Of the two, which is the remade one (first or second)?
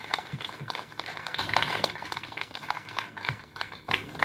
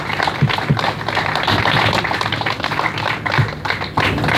first